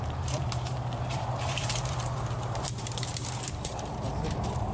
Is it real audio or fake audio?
fake